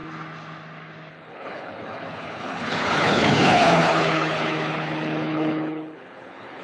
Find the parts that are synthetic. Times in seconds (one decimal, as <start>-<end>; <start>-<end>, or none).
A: 1.1-6.6